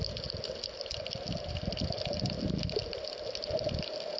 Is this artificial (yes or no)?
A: no